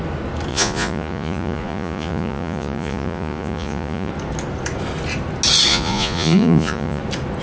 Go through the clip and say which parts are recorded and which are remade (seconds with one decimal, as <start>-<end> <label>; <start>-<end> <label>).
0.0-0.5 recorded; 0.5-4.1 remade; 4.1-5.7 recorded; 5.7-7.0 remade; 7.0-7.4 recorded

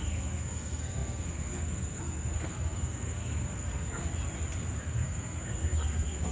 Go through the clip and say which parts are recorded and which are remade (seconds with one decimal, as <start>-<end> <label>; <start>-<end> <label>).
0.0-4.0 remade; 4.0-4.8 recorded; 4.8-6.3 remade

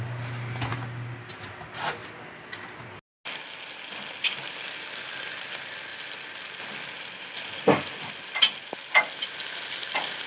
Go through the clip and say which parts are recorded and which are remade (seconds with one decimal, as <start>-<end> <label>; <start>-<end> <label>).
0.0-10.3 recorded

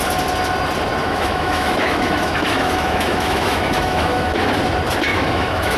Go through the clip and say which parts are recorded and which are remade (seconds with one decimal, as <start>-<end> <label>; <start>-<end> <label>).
0.0-1.0 recorded; 1.0-4.5 remade; 4.5-5.1 recorded; 5.1-5.8 remade